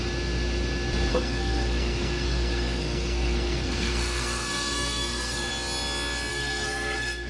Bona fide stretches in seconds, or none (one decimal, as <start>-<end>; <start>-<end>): 0.0-1.1; 5.5-6.3